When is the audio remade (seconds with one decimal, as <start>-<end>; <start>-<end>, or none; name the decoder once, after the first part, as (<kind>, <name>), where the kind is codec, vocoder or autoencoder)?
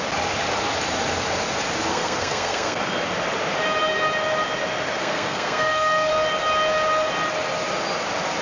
1.9-2.8 (codec, SNAC); 5.0-6.1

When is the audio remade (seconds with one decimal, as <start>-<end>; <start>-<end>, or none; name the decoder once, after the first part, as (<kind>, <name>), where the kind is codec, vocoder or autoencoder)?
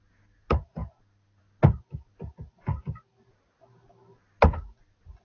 none